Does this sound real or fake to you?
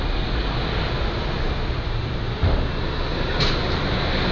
real